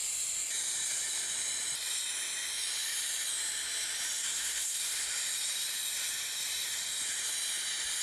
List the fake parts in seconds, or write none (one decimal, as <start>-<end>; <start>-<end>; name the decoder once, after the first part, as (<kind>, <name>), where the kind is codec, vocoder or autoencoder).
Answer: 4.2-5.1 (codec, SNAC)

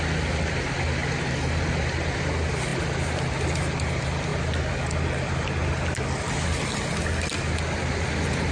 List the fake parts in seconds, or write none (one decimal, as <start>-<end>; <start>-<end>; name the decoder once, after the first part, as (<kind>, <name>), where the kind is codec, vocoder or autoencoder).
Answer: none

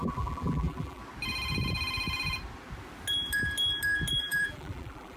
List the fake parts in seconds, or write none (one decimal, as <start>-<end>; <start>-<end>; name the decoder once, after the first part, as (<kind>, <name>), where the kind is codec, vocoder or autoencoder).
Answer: 0.0-1.0 (vocoder, BigVGAN v2); 4.1-5.2

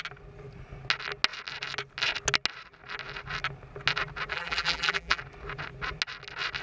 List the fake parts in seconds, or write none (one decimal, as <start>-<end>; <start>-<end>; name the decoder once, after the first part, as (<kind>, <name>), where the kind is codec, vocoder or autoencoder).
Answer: 4.3-5.2 (vocoder, BigVGAN v2)